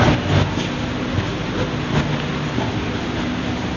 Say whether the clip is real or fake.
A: real